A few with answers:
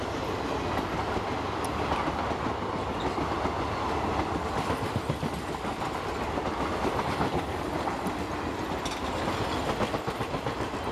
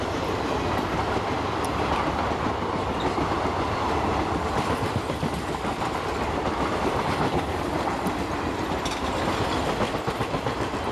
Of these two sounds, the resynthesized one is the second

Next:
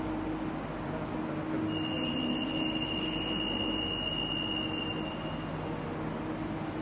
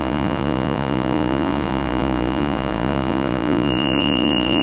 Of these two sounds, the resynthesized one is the second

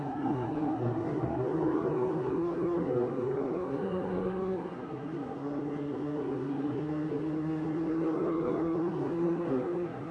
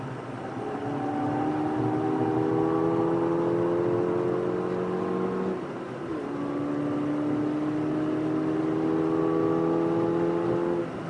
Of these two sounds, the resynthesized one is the first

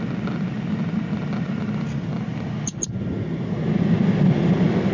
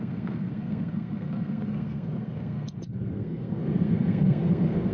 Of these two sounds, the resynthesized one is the second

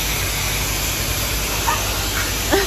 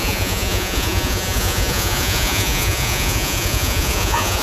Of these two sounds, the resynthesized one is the second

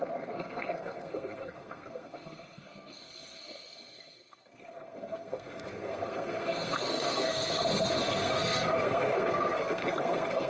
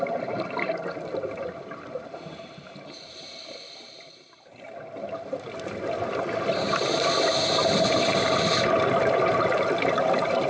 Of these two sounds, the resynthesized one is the first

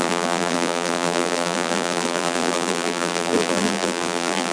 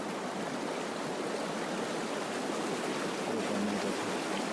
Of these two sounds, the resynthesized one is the first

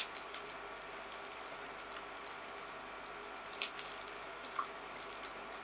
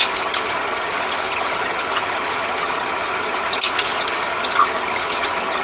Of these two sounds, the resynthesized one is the second